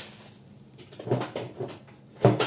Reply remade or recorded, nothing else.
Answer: recorded